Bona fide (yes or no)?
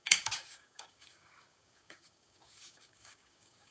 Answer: no